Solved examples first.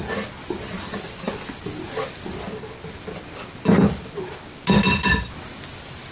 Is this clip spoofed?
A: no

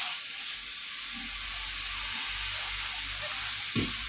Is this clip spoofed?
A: no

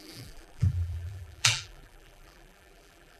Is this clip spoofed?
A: yes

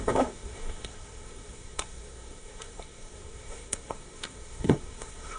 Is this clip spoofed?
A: yes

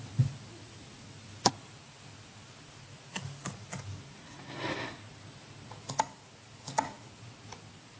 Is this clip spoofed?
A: no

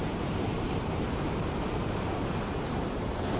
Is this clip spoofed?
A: yes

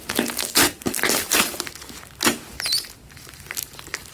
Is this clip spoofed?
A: no